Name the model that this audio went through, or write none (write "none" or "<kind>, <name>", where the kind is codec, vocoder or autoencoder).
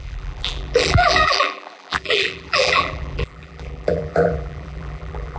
vocoder, BigVGAN v2